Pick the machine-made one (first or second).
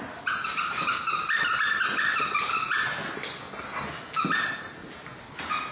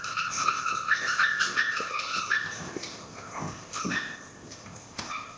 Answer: second